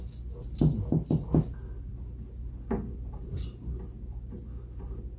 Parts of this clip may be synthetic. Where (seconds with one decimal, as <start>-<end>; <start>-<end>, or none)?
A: none